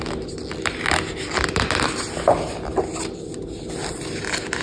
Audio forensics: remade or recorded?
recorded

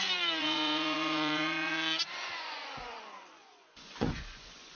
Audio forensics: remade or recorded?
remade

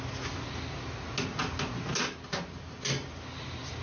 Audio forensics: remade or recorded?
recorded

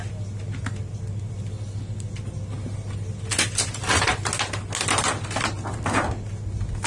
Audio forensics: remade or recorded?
recorded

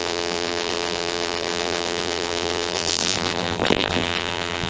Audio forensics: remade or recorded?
remade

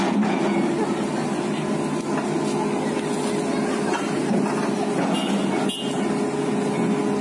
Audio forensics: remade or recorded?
recorded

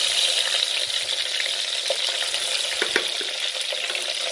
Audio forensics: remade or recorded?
recorded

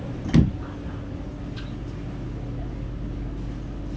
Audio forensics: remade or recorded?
recorded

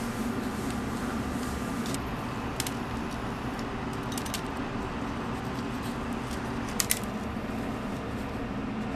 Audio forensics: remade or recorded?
recorded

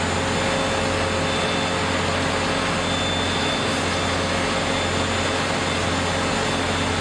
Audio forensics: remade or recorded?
recorded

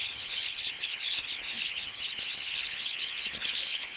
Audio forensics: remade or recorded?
remade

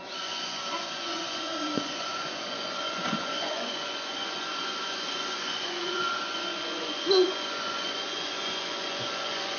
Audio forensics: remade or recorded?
remade